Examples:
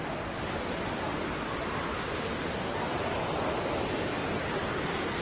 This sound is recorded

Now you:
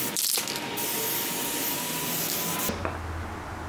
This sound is recorded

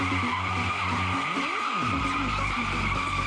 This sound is recorded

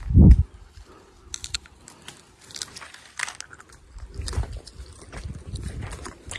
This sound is recorded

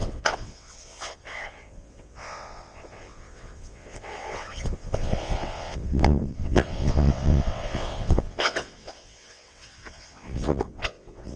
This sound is remade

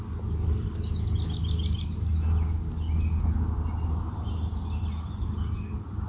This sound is recorded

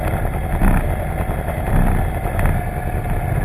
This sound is recorded